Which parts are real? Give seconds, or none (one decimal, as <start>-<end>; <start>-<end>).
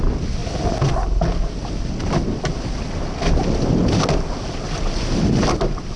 0.0-6.0